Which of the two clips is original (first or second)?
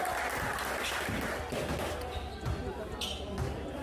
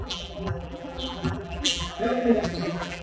first